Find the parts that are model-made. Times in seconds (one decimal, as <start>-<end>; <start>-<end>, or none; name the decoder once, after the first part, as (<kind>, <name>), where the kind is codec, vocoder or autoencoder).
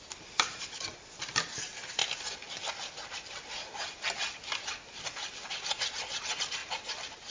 6.6-7.3 (vocoder, BigVGAN v2)